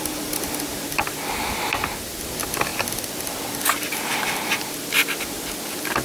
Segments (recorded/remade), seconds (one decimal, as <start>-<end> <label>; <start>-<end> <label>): 0.0-6.0 recorded